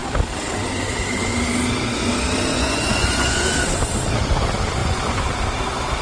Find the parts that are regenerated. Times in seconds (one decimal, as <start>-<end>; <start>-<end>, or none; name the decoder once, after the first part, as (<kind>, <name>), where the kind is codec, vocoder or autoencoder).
2.5-3.5 (vocoder, Vocos); 4.8-5.3

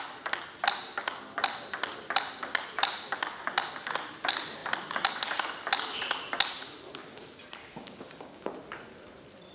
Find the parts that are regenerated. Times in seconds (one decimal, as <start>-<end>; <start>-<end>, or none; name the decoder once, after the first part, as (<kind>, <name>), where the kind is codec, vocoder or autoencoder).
7.6-8.4 (codec, DAC)

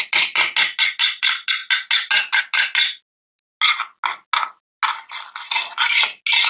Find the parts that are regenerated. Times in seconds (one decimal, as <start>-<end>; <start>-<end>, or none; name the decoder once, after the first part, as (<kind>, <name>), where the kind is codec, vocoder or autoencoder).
none

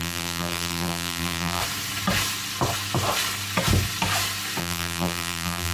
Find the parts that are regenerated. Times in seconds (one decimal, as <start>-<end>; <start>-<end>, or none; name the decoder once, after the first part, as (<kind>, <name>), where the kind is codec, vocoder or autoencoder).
0.0-1.6 (vocoder, BigVGAN v2); 4.6-5.7